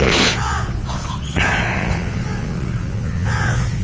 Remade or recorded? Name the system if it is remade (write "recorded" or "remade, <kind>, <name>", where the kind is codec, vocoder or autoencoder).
remade, vocoder, Vocos